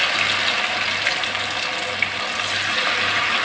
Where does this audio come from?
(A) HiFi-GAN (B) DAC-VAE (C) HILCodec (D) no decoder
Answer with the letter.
D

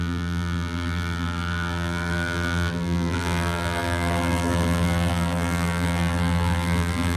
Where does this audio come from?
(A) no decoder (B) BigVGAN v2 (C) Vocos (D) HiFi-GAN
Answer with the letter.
B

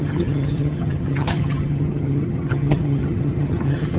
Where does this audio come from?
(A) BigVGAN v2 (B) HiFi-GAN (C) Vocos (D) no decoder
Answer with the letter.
B